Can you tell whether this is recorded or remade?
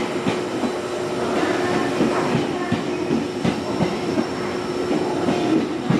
recorded